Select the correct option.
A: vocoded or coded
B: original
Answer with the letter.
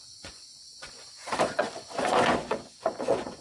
A